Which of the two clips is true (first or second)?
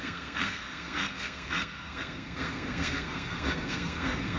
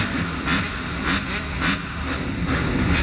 second